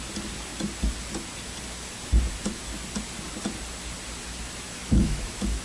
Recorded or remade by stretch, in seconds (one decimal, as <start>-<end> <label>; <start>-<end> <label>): 0.0-4.8 recorded; 4.8-5.6 remade